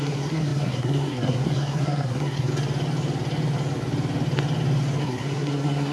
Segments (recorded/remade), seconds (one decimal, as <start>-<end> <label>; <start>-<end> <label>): 0.0-2.5 remade; 2.5-5.0 recorded; 5.0-5.9 remade